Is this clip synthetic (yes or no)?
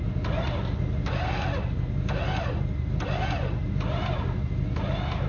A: no